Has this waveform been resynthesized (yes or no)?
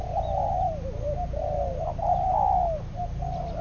no